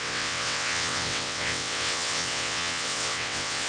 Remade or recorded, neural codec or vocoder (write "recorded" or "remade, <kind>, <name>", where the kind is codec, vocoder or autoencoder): remade, vocoder, WaveNeXt